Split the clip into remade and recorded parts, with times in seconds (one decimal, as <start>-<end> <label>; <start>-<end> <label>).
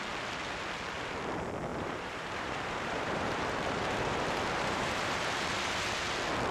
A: 0.0-1.7 recorded; 1.7-5.5 remade; 5.5-6.5 recorded